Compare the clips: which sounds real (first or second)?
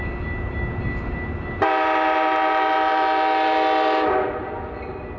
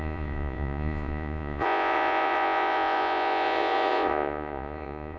first